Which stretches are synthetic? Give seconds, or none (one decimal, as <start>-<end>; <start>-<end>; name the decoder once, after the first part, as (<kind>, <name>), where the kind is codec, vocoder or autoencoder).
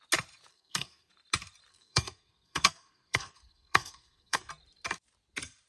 0.5-1.1 (codec, SNAC); 1.7-4.5